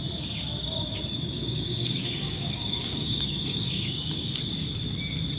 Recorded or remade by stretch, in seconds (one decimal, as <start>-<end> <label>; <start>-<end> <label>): 0.0-1.1 recorded; 1.1-4.3 remade; 4.3-5.4 recorded